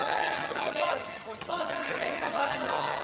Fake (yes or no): yes